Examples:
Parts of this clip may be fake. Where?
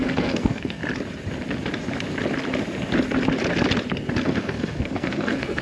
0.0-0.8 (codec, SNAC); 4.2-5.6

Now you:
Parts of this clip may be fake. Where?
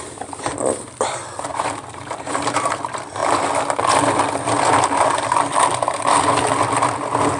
1.5-2.8 (vocoder, BigVGAN v2)